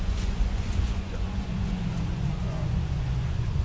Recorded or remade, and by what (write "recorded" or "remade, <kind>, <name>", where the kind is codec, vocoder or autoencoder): remade, vocoder, Vocos